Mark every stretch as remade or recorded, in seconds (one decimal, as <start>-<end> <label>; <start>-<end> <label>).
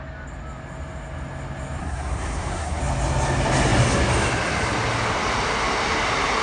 0.0-1.8 recorded; 1.8-2.8 remade; 2.8-6.4 recorded